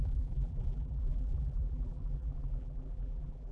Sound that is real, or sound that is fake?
fake